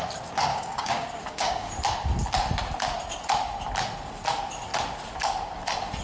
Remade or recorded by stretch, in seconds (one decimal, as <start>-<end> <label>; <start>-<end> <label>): 0.0-0.5 recorded; 0.5-1.7 remade; 1.7-6.0 recorded